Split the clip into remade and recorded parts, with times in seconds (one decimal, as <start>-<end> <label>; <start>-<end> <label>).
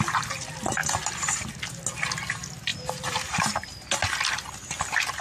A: 0.0-5.2 recorded